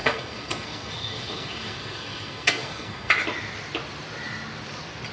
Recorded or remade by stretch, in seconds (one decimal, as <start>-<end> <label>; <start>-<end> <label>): 0.0-3.1 remade; 3.1-5.1 recorded